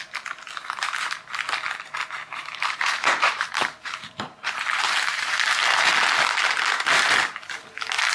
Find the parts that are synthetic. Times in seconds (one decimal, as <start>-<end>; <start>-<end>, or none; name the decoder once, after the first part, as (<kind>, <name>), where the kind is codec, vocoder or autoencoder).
2.2-5.3 (vocoder, BigVGAN v2)